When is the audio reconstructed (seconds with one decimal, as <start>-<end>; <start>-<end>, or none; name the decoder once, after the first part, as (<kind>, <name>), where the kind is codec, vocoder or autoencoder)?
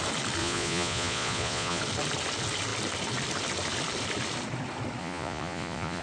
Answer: 0.4-1.8 (vocoder, Vocos); 5.0-6.0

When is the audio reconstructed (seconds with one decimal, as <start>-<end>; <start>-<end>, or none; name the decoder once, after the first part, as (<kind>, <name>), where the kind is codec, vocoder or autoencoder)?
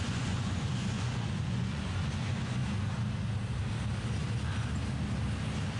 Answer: 0.0-2.6 (vocoder, Vocos)